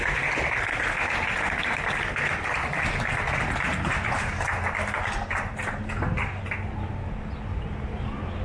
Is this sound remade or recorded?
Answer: recorded